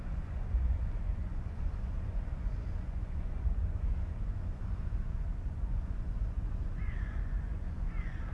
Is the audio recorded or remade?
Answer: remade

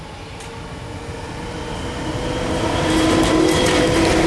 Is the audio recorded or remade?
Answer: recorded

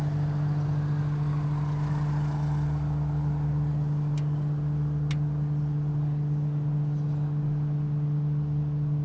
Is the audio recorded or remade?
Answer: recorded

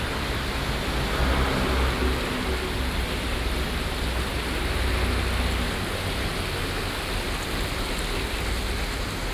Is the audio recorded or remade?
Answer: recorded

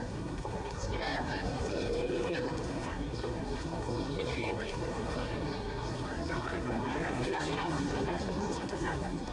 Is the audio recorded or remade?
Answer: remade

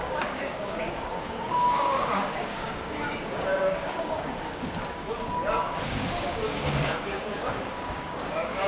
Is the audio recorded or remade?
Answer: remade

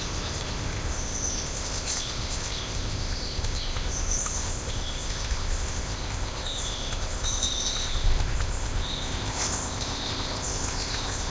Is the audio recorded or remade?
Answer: remade